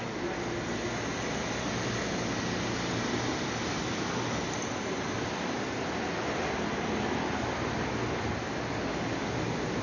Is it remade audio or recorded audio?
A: recorded